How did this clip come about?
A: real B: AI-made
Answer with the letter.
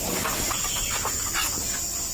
A